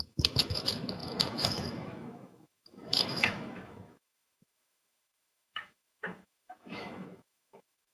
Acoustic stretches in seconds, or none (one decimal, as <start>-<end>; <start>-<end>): none